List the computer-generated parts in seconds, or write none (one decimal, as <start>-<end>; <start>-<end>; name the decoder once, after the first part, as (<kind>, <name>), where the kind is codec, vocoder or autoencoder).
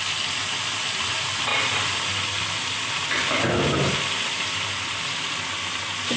none